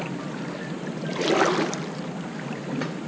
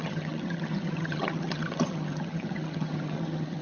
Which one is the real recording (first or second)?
first